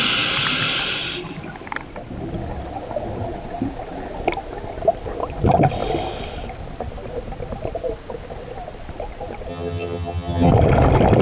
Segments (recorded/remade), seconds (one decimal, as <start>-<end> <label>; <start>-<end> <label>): 0.0-9.5 recorded; 9.5-10.5 remade; 10.5-11.2 recorded